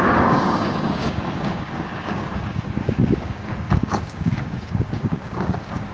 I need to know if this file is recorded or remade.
remade